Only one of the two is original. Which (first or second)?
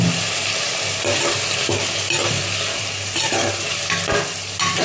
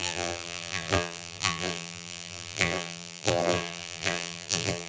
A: first